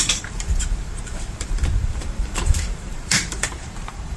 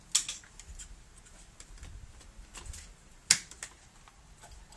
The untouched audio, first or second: second